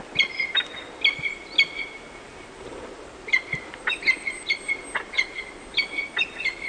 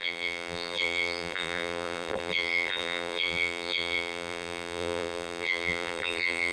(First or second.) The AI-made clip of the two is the second